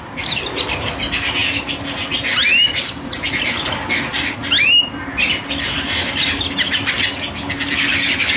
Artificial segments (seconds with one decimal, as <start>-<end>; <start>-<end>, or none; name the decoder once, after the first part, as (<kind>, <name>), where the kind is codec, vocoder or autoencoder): none